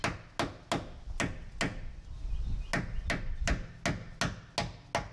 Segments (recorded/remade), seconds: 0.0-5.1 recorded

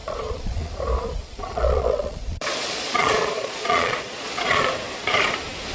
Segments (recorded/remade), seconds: 0.0-0.7 remade; 0.7-1.2 recorded; 1.2-4.6 remade; 4.6-5.7 recorded

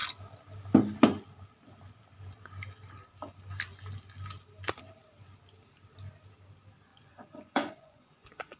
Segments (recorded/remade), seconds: 0.0-6.9 recorded; 6.9-8.6 remade